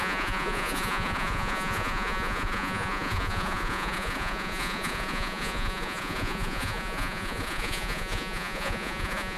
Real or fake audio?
fake